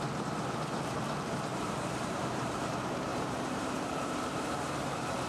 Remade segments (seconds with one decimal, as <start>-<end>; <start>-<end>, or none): 1.5-2.7; 3.1-5.3